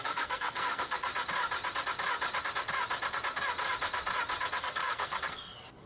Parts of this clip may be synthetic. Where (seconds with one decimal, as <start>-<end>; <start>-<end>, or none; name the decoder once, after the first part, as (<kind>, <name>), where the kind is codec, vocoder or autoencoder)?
0.0-1.1 (codec, SNAC); 4.6-5.9